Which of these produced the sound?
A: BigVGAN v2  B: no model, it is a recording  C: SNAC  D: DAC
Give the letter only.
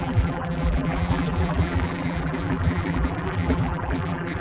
A